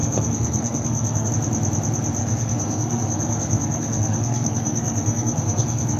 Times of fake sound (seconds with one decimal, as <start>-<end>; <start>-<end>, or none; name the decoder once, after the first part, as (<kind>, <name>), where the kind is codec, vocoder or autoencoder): 0.0-1.3 (codec, SNAC); 2.2-6.0